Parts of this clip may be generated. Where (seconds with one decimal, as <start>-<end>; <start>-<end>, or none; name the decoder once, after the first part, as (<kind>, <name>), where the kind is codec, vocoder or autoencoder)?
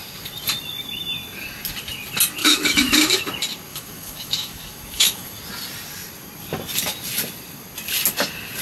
2.4-3.2 (autoencoder, DAC-VAE); 3.7-5.4